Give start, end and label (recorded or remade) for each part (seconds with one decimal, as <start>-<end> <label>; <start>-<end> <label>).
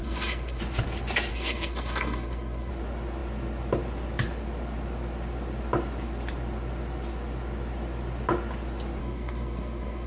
0.0-0.6 remade; 0.6-1.3 recorded; 1.3-2.7 remade; 2.7-9.0 recorded; 9.0-10.1 remade